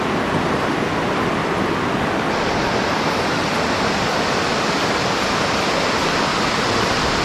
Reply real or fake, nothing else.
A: real